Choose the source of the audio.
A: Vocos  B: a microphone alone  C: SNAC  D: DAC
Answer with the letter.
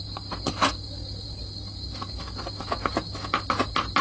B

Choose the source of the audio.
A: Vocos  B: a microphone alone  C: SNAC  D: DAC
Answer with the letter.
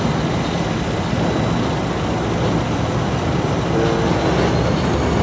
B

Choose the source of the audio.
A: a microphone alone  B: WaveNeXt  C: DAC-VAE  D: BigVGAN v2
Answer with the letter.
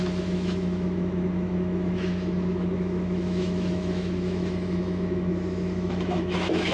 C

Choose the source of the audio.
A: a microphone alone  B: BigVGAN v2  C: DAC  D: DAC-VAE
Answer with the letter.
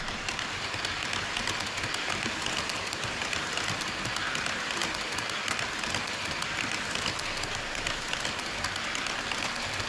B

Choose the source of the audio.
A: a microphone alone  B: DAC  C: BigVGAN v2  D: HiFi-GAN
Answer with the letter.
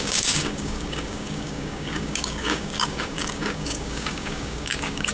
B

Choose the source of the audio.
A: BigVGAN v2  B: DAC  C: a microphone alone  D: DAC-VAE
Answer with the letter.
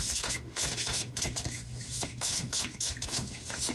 D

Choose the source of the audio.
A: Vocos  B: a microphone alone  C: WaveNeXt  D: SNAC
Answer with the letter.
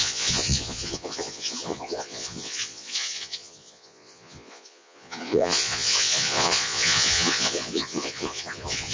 A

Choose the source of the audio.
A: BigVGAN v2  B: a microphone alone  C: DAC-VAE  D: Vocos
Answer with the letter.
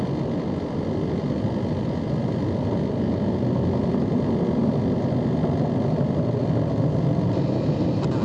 B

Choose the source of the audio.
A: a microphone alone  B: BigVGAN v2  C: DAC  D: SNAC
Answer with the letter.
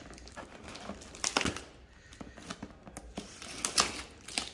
A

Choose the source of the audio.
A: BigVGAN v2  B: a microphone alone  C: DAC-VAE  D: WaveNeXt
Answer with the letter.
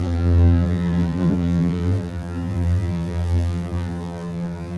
A